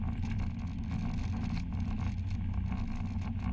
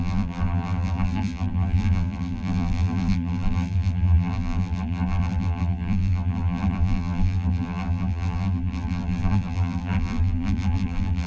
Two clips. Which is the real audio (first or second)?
first